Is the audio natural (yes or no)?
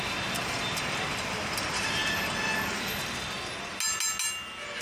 yes